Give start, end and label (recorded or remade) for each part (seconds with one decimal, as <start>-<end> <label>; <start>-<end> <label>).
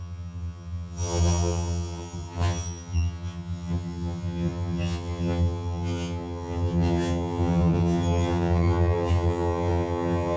0.0-10.4 remade